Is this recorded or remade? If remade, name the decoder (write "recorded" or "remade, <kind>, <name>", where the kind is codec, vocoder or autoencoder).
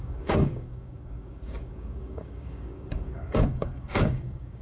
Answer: remade, codec, DAC